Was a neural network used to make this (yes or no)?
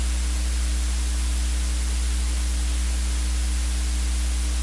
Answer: no